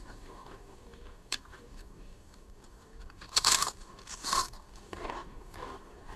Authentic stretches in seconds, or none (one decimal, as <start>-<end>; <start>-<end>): none